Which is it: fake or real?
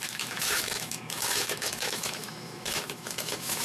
fake